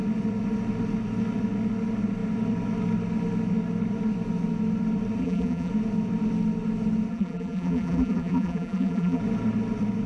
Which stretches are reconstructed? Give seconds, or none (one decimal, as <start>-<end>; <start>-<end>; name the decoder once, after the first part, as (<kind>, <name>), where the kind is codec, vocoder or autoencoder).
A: 5.2-5.7 (vocoder, BigVGAN v2); 7.1-9.2